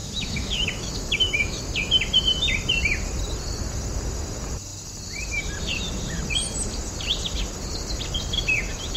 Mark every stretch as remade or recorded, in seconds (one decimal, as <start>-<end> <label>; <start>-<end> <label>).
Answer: 0.0-1.6 remade; 1.6-9.0 recorded